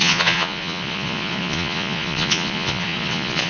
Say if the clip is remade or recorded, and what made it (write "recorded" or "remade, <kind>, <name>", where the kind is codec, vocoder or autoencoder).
remade, vocoder, Vocos